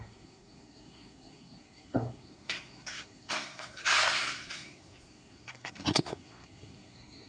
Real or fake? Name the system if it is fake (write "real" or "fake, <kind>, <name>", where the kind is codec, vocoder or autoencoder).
fake, codec, SNAC